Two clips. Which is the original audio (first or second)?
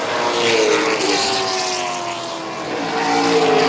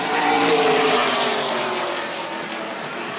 first